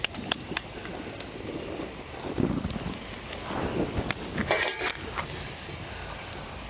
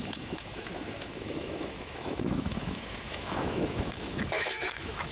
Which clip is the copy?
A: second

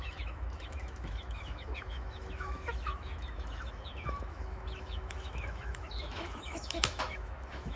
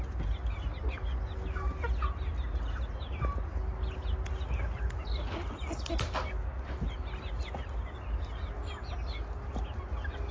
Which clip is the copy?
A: first